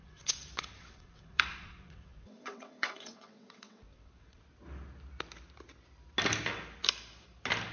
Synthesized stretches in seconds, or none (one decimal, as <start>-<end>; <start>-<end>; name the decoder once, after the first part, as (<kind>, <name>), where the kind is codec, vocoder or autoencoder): 0.0-4.4 (vocoder, WaveNeXt)